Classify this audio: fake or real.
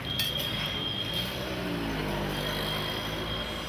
real